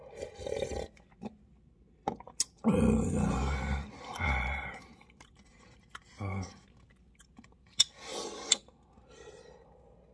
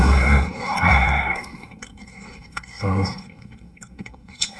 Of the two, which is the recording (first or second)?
first